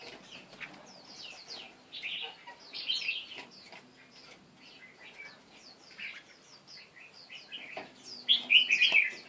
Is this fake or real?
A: real